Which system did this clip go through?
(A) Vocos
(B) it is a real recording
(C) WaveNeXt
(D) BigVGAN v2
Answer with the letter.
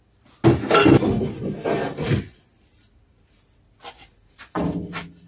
B